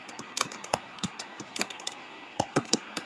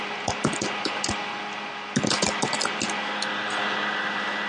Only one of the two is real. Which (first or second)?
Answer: second